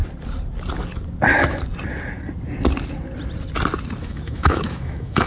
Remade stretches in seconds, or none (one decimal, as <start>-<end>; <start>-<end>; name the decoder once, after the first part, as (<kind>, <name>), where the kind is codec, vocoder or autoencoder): 4.0-5.3 (autoencoder, DAC-VAE)

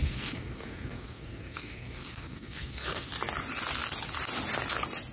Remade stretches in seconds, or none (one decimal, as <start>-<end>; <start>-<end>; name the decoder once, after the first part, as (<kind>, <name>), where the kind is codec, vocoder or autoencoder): 0.0-3.1 (codec, SNAC)

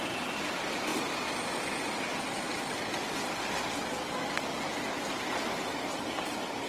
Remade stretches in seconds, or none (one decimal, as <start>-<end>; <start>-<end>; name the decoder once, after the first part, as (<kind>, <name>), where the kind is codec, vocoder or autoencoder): 0.0-0.9 (vocoder, BigVGAN v2); 1.7-2.1; 5.7-6.7